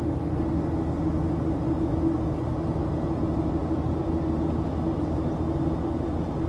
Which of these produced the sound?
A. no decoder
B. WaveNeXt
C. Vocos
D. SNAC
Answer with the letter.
A